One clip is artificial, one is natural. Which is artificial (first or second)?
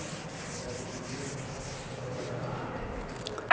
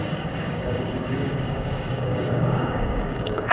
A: second